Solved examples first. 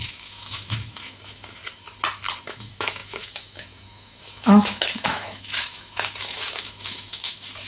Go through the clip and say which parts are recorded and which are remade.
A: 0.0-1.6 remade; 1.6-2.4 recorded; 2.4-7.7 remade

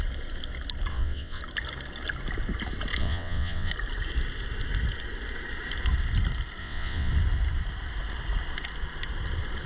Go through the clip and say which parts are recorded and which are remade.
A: 0.0-0.9 recorded; 0.9-1.4 remade; 1.4-3.0 recorded; 3.0-3.7 remade; 3.7-6.6 recorded; 6.6-7.1 remade; 7.1-9.7 recorded

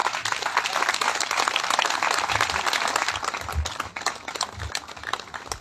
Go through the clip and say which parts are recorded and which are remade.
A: 0.0-3.0 recorded; 3.0-3.9 remade; 3.9-5.6 recorded